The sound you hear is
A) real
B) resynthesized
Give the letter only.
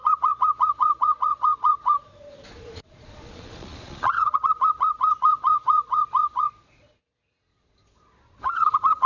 B